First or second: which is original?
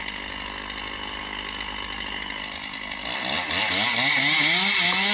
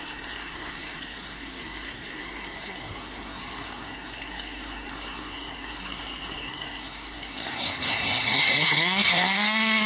first